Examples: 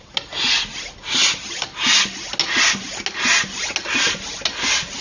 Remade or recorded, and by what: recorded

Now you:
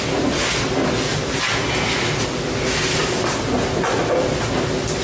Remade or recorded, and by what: recorded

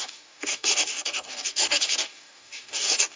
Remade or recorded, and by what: remade, codec, DAC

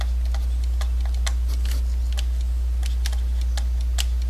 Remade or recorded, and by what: recorded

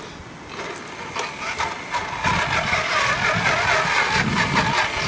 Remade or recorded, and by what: recorded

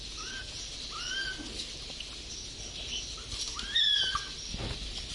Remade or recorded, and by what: recorded